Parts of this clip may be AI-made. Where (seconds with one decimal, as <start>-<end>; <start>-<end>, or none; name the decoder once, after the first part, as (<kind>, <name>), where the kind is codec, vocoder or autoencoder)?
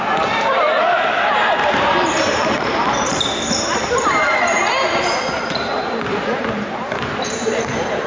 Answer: 0.0-4.6 (vocoder, BigVGAN v2); 5.5-8.1